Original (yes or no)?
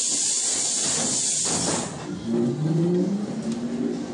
yes